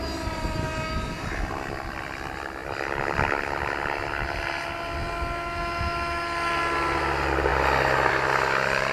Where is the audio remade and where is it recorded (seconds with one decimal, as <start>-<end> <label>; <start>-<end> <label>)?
0.0-8.9 recorded